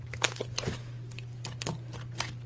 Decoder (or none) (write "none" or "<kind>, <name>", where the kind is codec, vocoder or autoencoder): vocoder, BigVGAN v2